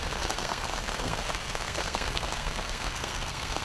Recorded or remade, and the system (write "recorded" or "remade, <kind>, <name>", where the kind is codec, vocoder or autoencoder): remade, codec, SNAC